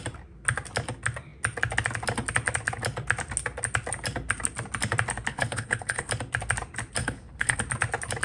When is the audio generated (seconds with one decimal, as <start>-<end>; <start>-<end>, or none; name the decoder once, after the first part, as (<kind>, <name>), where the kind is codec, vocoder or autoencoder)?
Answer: 5.3-6.1 (codec, HILCodec); 7.0-7.6